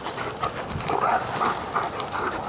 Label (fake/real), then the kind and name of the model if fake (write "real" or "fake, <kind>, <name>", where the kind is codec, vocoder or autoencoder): real